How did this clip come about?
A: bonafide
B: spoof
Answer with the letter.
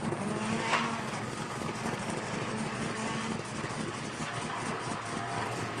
B